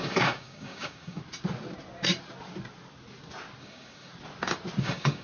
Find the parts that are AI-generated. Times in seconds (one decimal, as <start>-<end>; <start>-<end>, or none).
0.0-1.2; 3.6-4.1; 4.8-5.2

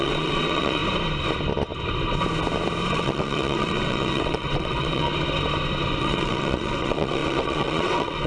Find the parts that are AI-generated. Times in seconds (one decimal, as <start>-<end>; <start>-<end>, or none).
0.0-0.8; 2.9-5.1; 6.0-8.3

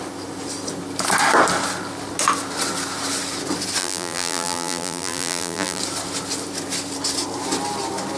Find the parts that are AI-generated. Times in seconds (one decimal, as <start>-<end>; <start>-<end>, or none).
3.8-5.8

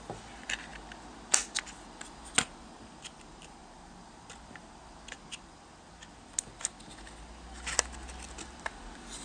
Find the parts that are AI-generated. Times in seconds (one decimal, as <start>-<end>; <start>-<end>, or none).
none

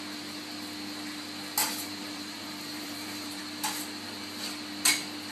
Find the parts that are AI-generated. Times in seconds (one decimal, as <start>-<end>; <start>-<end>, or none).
1.6-3.4